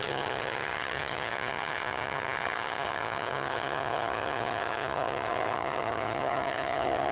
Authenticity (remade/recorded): remade